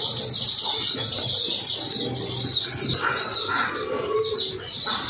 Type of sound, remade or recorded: recorded